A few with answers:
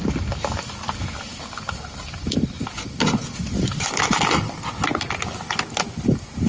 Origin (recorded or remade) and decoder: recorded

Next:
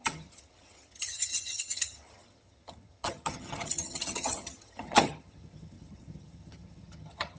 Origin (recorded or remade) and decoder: remade, vocoder, HiFi-GAN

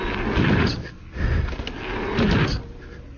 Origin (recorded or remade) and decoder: recorded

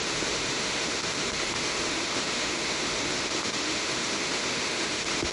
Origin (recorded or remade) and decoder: remade, autoencoder, DAC-VAE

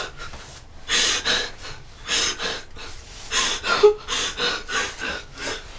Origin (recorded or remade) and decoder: recorded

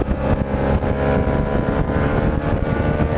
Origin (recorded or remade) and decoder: recorded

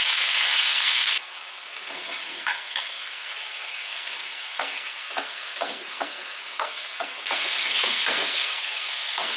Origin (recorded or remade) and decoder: remade, codec, SNAC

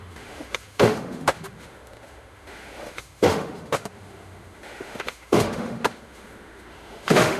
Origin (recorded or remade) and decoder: remade, autoencoder, DAC-VAE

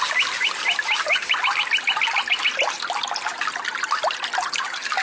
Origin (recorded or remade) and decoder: recorded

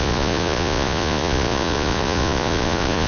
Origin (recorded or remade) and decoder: remade, vocoder, Vocos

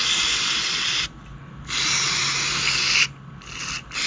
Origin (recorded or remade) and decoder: recorded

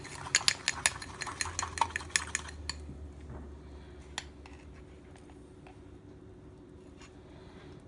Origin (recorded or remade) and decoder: recorded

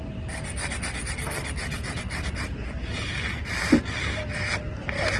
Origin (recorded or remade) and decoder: recorded